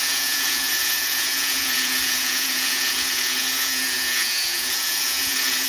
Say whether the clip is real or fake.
fake